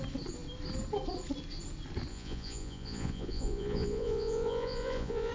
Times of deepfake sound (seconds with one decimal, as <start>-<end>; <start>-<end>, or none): 2.1-5.3